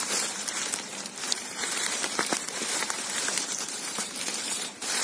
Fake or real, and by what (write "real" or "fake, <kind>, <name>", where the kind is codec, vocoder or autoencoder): fake, vocoder, BigVGAN v2